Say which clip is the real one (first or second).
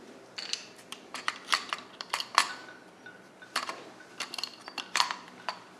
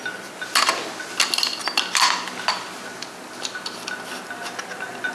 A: second